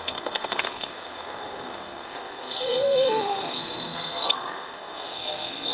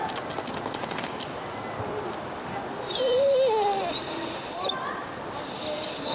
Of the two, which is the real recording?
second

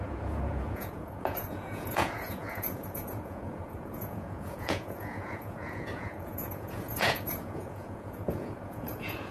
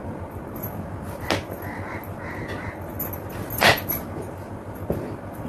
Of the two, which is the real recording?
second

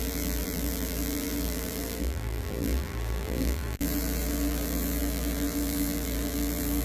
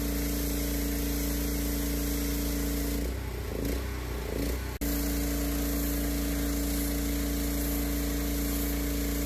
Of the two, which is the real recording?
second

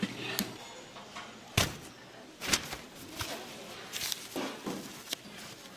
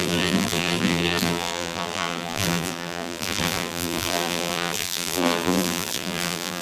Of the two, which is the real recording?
first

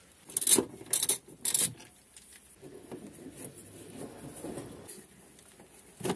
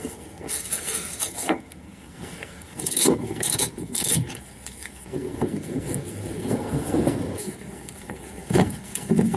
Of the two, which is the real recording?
first